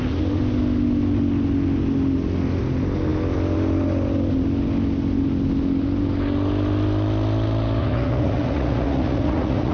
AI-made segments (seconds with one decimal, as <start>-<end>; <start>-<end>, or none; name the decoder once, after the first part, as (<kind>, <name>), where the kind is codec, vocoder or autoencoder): 7.8-9.7 (vocoder, Vocos)